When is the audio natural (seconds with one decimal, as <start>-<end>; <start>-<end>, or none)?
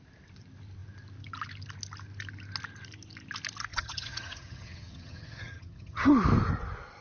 0.0-3.7; 6.1-7.0